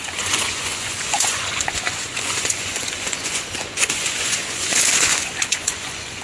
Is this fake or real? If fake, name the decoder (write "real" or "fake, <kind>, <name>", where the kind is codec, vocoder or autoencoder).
fake, vocoder, Vocos